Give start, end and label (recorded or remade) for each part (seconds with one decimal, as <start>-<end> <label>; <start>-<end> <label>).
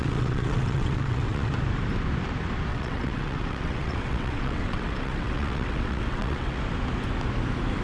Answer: 0.0-1.5 remade; 1.5-2.7 recorded; 2.7-6.6 remade; 6.6-7.8 recorded